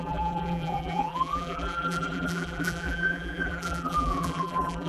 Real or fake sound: fake